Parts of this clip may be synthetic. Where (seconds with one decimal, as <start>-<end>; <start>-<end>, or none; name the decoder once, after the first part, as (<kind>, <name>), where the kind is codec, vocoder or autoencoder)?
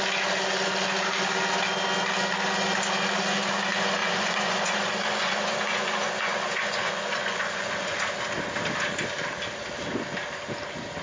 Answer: 4.0-8.0 (vocoder, Vocos)